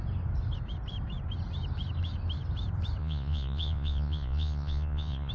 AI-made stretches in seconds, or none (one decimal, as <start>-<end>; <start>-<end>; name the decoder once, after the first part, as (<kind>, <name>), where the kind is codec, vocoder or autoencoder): 3.0-5.3 (vocoder, Vocos)